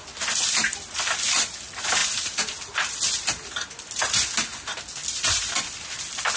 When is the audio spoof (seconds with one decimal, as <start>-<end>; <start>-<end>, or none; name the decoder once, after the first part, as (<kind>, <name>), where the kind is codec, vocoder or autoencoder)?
none